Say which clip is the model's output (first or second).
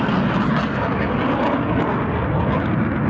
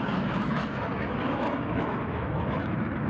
second